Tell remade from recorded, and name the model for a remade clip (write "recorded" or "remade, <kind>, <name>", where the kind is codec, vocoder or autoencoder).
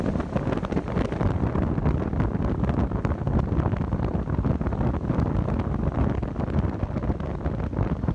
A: recorded